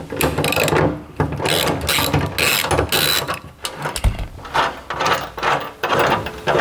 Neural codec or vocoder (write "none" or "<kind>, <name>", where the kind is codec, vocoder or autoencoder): none